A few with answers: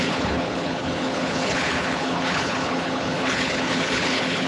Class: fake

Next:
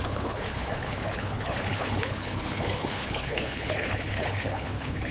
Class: fake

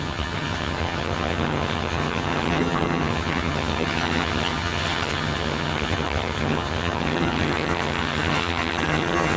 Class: fake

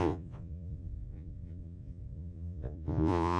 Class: fake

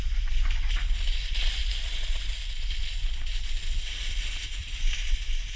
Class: real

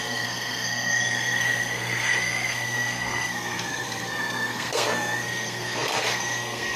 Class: fake